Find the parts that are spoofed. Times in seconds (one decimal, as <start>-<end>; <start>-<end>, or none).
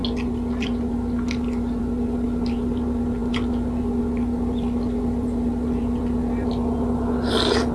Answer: none